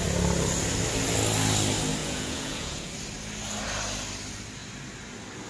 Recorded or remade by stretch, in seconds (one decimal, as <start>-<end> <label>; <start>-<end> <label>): 0.0-2.0 recorded; 2.0-2.9 remade; 2.9-5.5 recorded